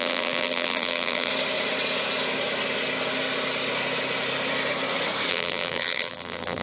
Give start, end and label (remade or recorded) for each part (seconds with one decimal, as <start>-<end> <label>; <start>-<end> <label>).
0.0-1.3 remade; 1.3-5.3 recorded; 5.3-6.6 remade